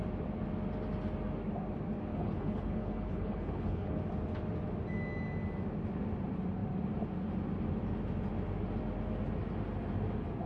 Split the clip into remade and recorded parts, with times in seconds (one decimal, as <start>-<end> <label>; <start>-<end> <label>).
0.0-2.1 recorded; 2.1-4.0 remade; 4.0-10.5 recorded